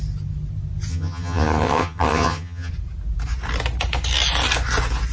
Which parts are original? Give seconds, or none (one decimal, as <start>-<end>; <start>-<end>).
0.0-0.9; 2.7-5.1